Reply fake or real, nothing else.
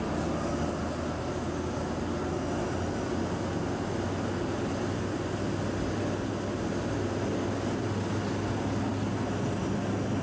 real